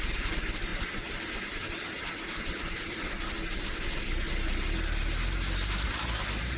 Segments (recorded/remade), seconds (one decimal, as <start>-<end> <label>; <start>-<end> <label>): 0.0-6.6 recorded